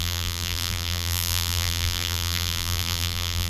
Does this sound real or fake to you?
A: fake